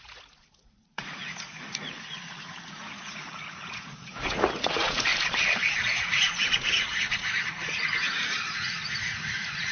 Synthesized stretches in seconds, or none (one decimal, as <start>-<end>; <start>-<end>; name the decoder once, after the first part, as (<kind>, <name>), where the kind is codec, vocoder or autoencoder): 0.0-5.1 (vocoder, Vocos); 5.6-9.7